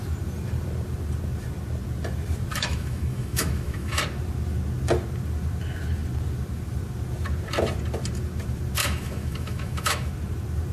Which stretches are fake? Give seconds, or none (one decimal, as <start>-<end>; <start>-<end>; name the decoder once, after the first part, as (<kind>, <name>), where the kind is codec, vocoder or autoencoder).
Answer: 2.5-4.0 (autoencoder, DAC-VAE); 8.8-10.1